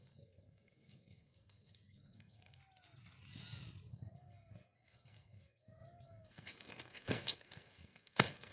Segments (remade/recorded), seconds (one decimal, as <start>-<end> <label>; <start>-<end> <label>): 0.0-2.6 remade; 2.6-3.9 recorded; 3.9-8.5 remade